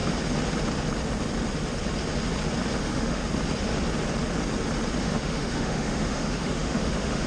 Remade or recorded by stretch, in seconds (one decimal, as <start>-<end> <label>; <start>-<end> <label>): 0.0-2.8 recorded; 2.8-3.2 remade; 3.2-5.0 recorded; 5.0-7.3 remade

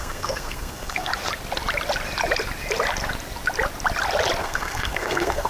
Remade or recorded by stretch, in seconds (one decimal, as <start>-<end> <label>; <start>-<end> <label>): 0.0-1.1 remade; 1.1-4.4 recorded; 4.4-5.5 remade